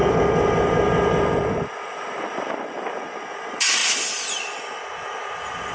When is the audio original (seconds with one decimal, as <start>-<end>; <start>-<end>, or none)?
0.0-5.7